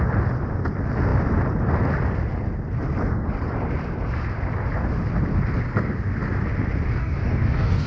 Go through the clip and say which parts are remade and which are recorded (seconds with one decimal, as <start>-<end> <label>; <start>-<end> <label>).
0.0-7.0 recorded; 7.0-7.9 remade